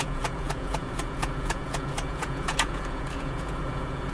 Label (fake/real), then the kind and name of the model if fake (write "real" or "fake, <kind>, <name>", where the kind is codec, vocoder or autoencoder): fake, vocoder, Vocos